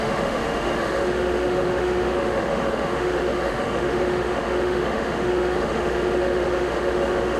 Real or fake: fake